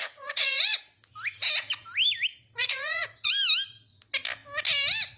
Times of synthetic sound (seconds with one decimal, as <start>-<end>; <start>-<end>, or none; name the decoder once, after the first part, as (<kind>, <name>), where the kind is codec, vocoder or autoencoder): 0.0-0.8 (vocoder, Vocos); 2.6-3.3